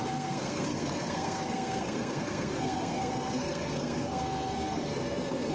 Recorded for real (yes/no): no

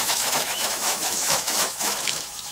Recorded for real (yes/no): no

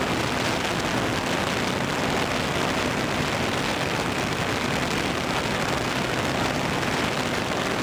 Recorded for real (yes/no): yes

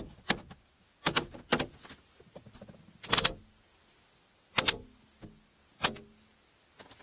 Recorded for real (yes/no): yes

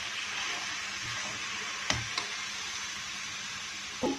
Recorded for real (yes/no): yes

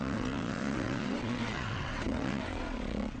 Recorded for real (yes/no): no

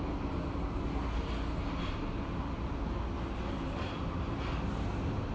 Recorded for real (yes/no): yes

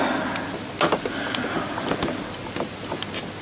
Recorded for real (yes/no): yes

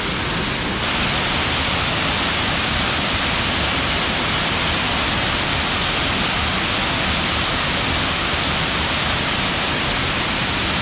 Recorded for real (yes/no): yes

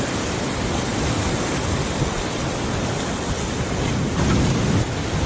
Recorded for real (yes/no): yes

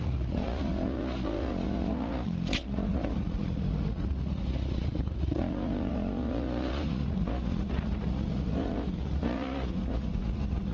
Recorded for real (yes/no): no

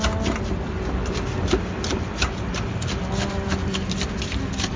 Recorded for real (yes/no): yes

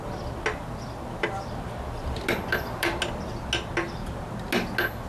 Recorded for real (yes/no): yes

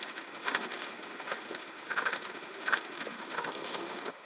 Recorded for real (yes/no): no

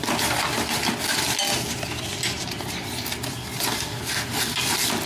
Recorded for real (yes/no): yes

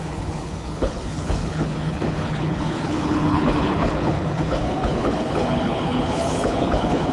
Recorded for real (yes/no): no